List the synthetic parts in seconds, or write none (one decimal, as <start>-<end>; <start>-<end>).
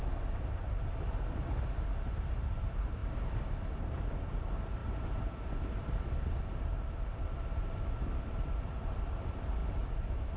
0.0-10.4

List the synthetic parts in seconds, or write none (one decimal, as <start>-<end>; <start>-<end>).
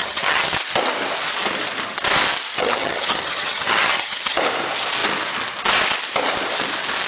0.0-0.5; 2.5-4.4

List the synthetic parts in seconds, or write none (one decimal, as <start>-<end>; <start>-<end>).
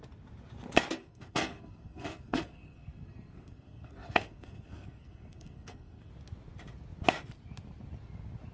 1.0-6.1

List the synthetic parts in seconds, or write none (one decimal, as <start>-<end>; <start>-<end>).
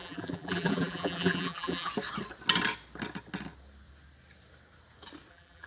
0.0-1.9; 5.3-5.7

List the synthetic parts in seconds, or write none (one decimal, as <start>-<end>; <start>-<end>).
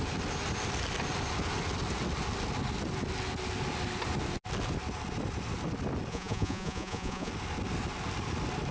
6.1-7.3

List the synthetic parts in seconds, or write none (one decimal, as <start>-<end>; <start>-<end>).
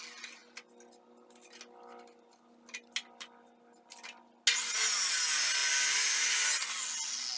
none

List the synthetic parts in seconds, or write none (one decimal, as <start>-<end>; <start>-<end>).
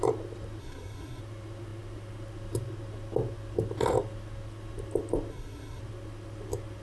0.6-1.2; 5.3-5.8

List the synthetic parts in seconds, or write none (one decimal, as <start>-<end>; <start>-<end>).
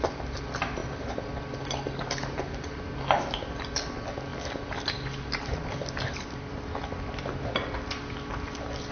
none